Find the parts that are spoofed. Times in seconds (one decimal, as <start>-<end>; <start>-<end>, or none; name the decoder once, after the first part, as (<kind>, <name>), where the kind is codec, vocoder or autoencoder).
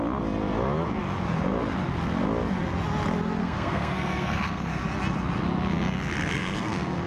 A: 3.4-4.8 (codec, SNAC); 6.3-7.1